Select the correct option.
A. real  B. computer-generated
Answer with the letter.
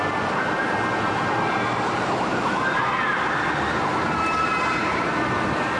A